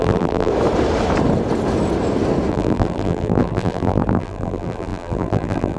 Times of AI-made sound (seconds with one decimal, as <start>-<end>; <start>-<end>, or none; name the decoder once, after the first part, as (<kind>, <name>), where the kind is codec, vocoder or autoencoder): 0.0-0.5 (vocoder, BigVGAN v2); 2.5-5.8